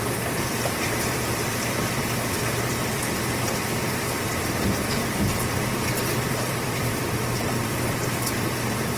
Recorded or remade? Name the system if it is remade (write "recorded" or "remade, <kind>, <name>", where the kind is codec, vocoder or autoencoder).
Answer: remade, vocoder, BigVGAN v2